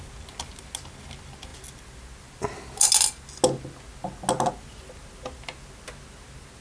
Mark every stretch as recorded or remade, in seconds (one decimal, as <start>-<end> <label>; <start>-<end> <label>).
0.0-6.6 recorded